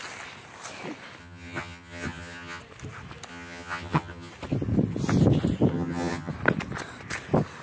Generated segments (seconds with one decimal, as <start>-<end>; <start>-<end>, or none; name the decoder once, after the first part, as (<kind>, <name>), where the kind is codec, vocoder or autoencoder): 1.2-2.6 (vocoder, HiFi-GAN); 3.3-4.3; 5.7-6.3